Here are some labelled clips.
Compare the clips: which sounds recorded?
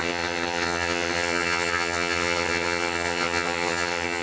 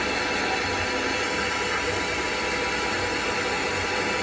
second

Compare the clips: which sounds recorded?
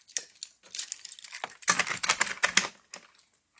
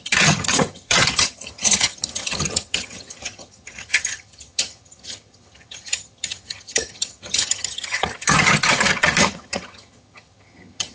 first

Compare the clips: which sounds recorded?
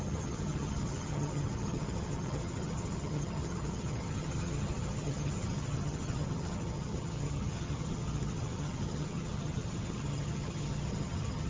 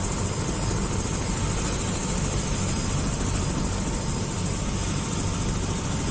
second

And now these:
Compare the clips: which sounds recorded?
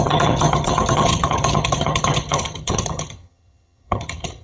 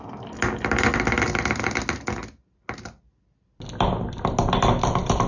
second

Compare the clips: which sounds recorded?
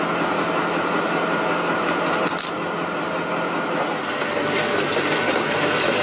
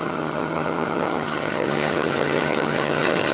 first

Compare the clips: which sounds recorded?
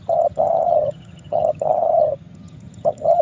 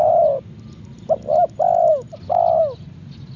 second